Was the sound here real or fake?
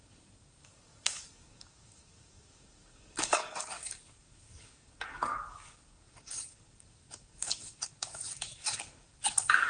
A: fake